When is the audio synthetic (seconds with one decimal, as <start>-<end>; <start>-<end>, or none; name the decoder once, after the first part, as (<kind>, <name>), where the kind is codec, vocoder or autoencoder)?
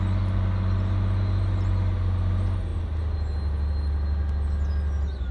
none